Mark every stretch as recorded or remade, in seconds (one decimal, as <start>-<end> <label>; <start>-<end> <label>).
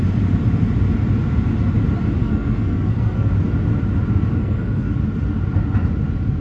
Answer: 0.0-2.2 recorded; 2.2-3.3 remade; 3.3-4.4 recorded; 4.4-4.9 remade; 4.9-6.4 recorded